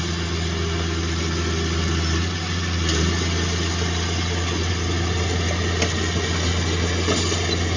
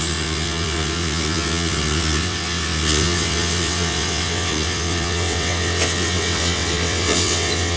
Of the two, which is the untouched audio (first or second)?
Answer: first